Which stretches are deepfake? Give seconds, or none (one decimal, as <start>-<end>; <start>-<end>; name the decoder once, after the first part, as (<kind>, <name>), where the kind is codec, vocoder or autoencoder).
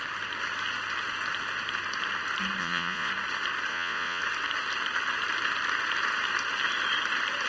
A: 2.6-3.1 (vocoder, Vocos); 3.7-4.2